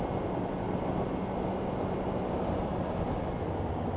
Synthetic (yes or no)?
no